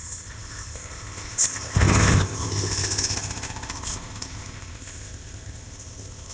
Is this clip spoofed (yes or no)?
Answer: yes